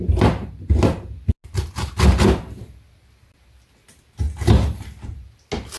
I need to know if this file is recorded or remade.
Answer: recorded